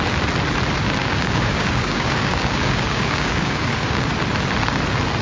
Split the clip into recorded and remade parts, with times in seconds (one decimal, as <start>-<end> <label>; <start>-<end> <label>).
0.0-1.0 recorded; 1.0-4.1 remade; 4.1-5.2 recorded

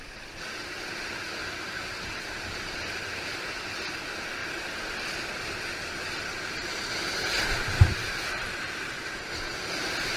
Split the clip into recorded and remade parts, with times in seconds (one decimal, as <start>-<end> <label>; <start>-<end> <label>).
0.0-1.4 recorded; 1.4-2.7 remade; 2.7-8.0 recorded; 8.0-9.5 remade; 9.5-10.2 recorded